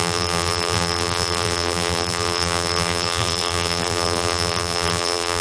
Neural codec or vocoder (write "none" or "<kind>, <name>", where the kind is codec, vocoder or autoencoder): vocoder, BigVGAN v2